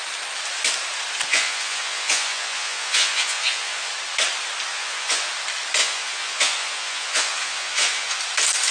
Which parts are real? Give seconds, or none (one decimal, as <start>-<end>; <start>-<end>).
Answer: 0.0-1.3; 3.9-4.7; 5.3-5.8; 8.2-8.7